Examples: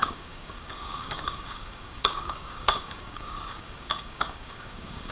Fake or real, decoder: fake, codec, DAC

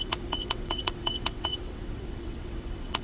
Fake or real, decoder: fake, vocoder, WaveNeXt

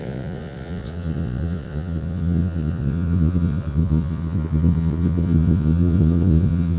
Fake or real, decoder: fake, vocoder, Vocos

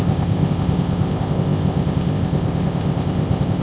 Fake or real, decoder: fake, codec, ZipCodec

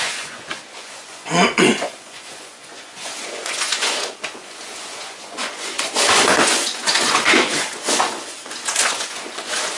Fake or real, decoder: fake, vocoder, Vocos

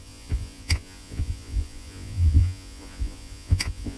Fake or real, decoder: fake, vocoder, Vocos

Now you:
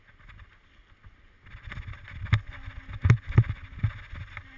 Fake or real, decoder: real